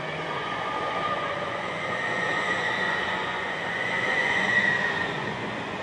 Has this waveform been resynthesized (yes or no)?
yes